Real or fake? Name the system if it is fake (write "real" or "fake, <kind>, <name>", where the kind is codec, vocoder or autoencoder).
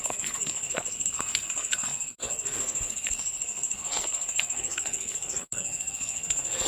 fake, codec, SNAC